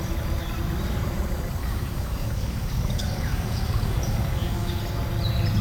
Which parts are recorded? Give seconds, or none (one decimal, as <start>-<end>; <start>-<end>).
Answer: 0.0-1.6; 4.8-5.6

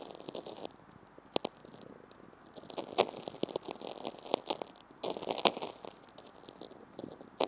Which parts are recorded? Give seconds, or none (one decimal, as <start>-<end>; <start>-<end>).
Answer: 0.0-7.5

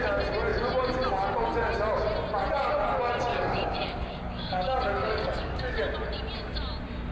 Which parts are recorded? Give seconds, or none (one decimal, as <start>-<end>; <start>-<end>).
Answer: 0.0-3.3; 5.8-7.1

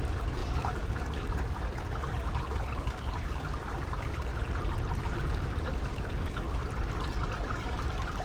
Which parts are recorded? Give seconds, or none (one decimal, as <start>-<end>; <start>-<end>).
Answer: 4.3-5.0; 6.6-7.4

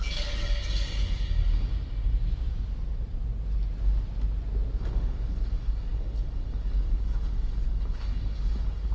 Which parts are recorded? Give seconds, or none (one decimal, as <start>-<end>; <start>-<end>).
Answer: 1.7-4.8